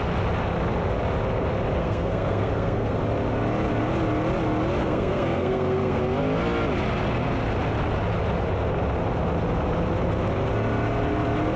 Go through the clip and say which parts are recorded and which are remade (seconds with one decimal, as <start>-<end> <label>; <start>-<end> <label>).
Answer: 0.0-1.8 recorded; 1.8-3.0 remade; 3.0-4.8 recorded; 4.8-6.0 remade; 6.0-11.6 recorded